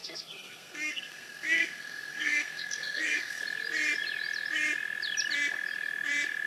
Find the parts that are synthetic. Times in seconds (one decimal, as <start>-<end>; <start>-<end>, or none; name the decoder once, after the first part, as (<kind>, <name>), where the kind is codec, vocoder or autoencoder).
0.0-3.4 (codec, SNAC)